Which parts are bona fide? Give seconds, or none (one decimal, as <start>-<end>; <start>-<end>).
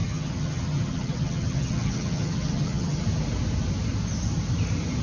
3.0-5.0